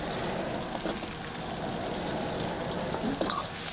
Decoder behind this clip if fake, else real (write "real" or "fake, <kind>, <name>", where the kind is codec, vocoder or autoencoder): real